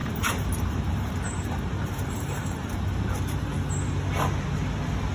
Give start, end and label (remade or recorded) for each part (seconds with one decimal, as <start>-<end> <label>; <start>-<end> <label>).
0.0-3.1 remade; 3.1-5.1 recorded